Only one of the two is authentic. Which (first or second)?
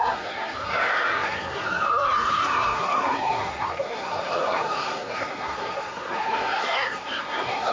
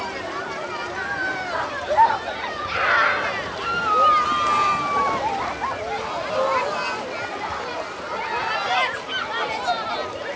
second